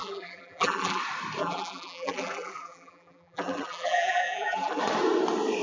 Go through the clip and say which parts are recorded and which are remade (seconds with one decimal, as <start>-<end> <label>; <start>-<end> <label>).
0.0-1.0 remade; 1.0-1.4 recorded; 1.4-4.8 remade; 4.8-5.6 recorded